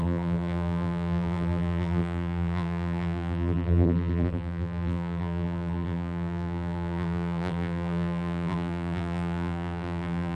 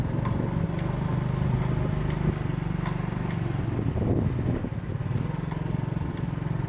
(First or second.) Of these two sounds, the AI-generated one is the first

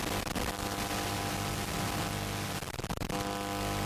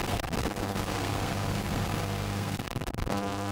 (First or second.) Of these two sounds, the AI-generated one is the second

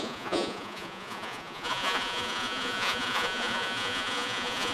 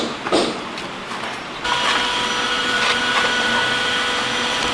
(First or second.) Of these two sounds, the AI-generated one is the first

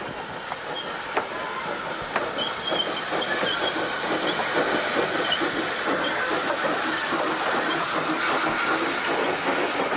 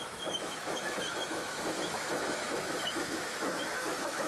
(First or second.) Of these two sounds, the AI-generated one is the second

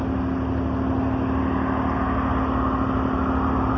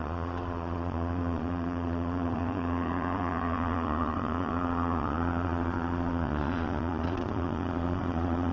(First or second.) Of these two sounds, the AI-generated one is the second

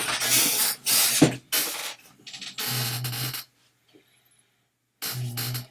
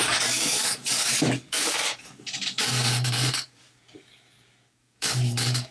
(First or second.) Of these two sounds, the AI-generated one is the second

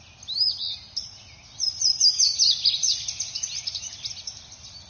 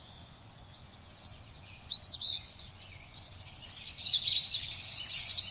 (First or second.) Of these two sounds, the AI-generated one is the second